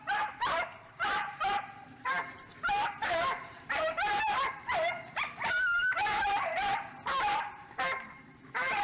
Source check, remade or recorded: remade